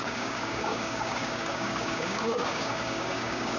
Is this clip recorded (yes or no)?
no